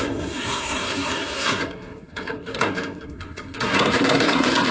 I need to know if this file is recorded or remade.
remade